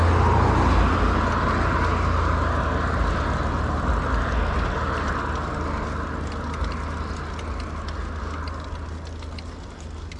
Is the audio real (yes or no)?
yes